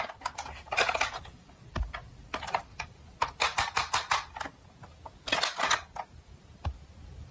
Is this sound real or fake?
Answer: real